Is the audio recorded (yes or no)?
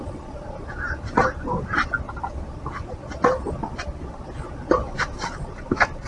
yes